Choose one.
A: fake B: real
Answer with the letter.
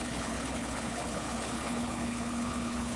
A